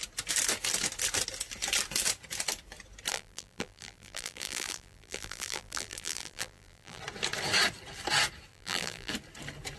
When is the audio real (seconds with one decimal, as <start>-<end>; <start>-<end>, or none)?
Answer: 0.0-3.1; 7.0-8.5; 9.1-9.8